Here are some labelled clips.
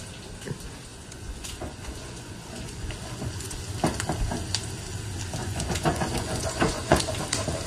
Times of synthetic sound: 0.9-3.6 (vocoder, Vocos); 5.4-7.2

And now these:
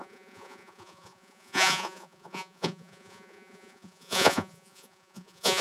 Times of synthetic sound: 0.0-5.6 (vocoder, Vocos)

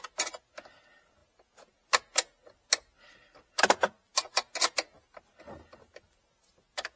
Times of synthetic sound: none

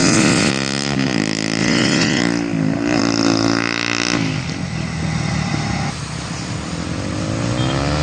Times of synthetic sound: 0.0-0.5 (vocoder, Vocos); 1.6-2.2

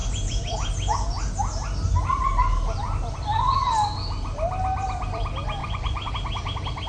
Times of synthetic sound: 5.6-6.1 (vocoder, Vocos)

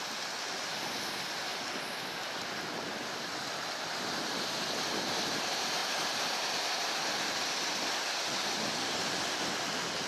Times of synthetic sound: none